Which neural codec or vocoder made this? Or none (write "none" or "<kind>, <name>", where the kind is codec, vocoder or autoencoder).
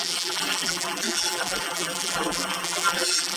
vocoder, BigVGAN v2